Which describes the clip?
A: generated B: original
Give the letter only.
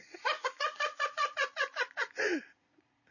A